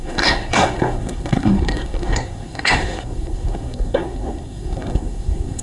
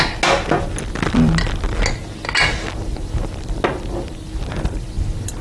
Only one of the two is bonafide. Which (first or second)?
second